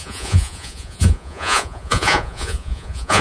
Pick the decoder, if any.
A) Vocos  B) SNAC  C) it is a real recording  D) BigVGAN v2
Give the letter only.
A